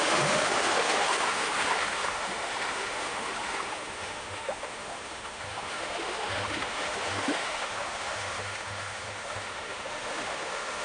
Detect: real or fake fake